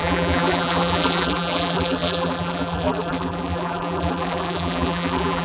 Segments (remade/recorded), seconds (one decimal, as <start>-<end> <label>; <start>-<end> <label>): 0.0-5.4 remade